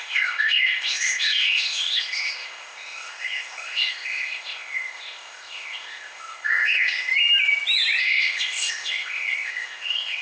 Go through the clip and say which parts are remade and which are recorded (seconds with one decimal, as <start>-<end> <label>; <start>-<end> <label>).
0.0-7.1 remade; 7.1-8.0 recorded; 8.0-10.2 remade